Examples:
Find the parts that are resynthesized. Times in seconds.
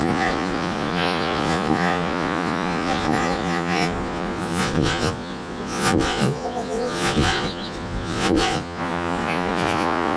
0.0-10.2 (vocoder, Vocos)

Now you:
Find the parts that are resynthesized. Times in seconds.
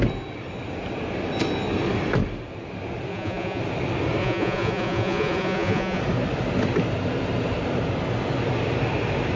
3.1-3.6 (vocoder, Vocos); 4.2-6.0